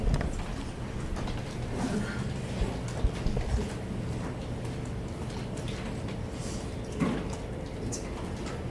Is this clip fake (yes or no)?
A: no